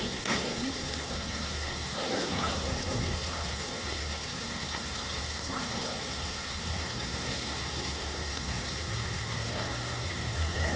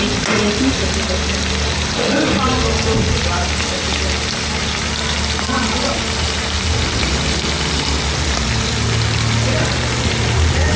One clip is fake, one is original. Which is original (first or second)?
second